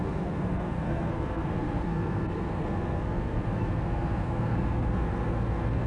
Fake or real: fake